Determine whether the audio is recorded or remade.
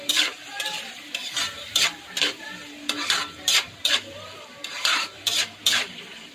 remade